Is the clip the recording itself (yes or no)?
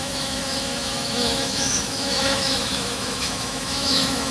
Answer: no